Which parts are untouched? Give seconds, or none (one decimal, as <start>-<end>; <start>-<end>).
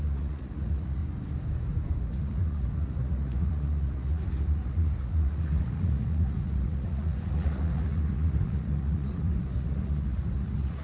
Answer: 1.0-2.1